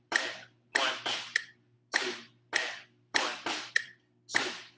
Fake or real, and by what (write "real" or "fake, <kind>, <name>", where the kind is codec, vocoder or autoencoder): fake, vocoder, BigVGAN v2